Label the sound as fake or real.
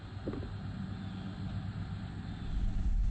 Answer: real